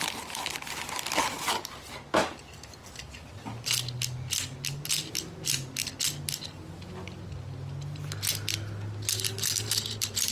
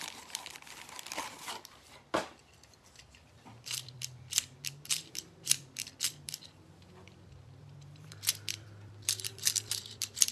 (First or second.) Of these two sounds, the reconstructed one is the second